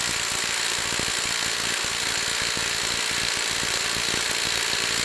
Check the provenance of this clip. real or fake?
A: real